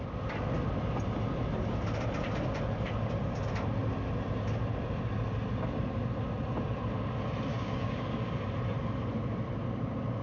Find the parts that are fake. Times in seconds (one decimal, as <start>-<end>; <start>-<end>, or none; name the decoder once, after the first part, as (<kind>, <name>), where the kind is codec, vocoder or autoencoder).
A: 7.5-8.3 (codec, DAC)